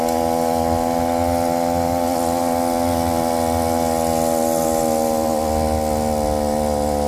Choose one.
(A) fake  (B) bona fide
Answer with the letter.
B